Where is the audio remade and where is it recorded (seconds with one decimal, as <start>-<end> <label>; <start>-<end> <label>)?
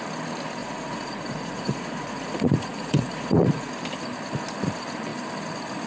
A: 0.0-0.6 recorded; 0.6-3.7 remade; 3.7-5.9 recorded